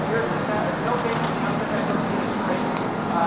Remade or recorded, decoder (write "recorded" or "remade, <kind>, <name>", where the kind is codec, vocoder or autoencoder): recorded